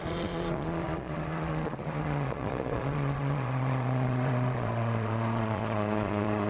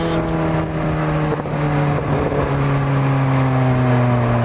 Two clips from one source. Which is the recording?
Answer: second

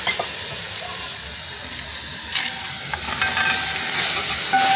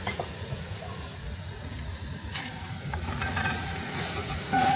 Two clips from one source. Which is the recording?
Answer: first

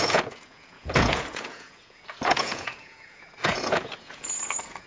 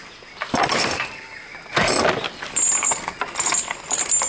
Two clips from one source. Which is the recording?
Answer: second